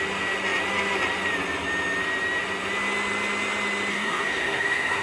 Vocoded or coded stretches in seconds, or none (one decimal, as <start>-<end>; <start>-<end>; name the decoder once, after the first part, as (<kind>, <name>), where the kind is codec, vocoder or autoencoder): 3.9-5.0 (codec, SNAC)